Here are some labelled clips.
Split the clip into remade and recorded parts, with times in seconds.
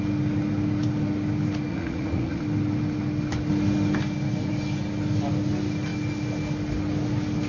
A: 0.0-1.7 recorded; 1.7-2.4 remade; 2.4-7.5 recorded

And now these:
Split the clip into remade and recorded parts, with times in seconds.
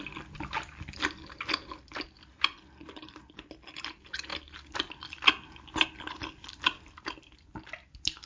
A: 0.0-8.3 recorded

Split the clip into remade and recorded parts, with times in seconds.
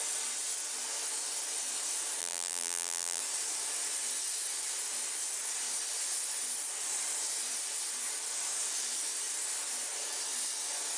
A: 0.0-2.2 recorded; 2.2-3.2 remade; 3.2-11.0 recorded